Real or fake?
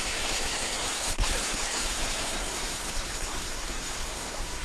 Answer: fake